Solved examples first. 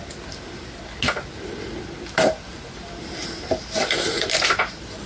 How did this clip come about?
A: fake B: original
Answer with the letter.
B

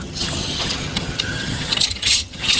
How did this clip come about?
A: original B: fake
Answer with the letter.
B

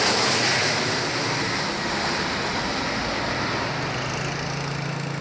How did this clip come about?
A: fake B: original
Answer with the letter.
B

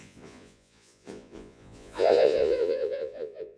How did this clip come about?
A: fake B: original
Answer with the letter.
A